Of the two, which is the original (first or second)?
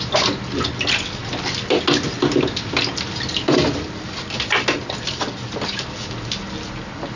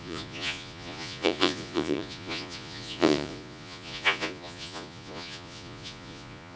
first